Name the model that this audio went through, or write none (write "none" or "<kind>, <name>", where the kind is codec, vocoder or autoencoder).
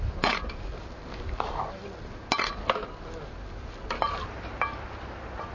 none